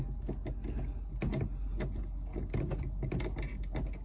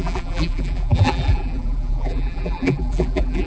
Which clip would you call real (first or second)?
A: first